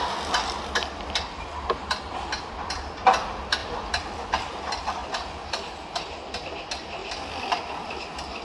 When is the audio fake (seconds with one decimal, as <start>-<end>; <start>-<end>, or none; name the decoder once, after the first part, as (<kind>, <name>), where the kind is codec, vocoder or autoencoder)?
3.6-4.5 (vocoder, BigVGAN v2); 7.0-8.0